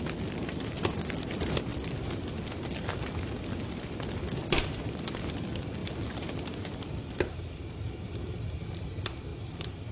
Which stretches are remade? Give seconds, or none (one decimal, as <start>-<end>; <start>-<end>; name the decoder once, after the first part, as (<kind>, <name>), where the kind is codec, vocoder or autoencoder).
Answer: 1.7-2.7 (vocoder, BigVGAN v2); 5.8-8.2; 9.3-9.9

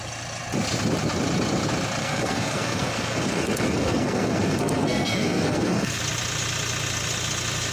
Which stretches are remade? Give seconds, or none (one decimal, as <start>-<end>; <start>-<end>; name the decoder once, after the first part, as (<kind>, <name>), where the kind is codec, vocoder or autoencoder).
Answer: 2.0-6.0 (codec, SNAC)

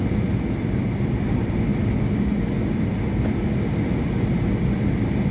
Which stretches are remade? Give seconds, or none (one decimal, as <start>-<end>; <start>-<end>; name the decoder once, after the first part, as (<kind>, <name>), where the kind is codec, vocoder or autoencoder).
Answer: none

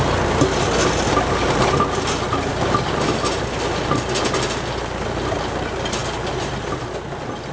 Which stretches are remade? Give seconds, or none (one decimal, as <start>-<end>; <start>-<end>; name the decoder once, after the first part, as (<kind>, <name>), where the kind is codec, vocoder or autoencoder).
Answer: none